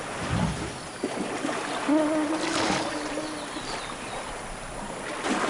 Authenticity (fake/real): real